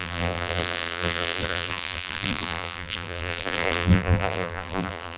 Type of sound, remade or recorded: remade